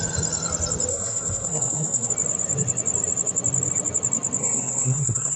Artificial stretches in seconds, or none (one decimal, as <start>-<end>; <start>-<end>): 0.9-2.1; 4.4-5.4